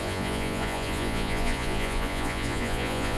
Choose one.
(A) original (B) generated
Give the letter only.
B